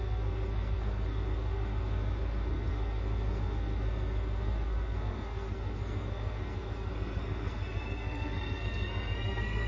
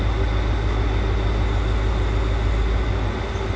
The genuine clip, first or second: second